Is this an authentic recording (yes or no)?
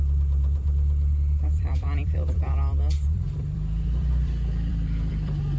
no